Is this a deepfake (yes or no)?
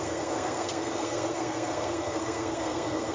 yes